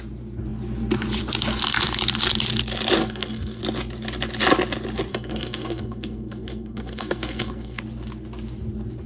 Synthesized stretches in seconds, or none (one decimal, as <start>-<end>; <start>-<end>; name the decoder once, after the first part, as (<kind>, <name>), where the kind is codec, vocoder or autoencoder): 3.0-3.6 (codec, SNAC); 5.1-7.8